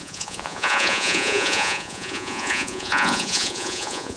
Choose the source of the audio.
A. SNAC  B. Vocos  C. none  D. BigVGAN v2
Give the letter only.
B